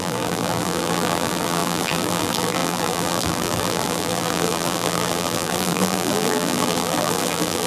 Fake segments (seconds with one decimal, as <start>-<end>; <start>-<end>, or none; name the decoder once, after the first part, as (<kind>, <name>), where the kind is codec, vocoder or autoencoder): 0.0-7.7 (vocoder, BigVGAN v2)